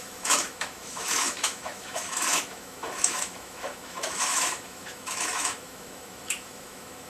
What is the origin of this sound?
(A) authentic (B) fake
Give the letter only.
B